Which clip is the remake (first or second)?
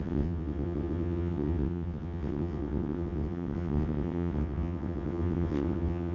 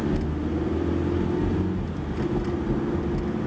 first